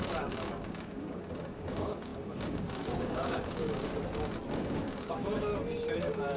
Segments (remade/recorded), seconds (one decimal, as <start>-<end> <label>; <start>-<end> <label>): 0.0-3.9 remade; 3.9-4.5 recorded; 4.5-5.5 remade; 5.5-6.0 recorded; 6.0-6.4 remade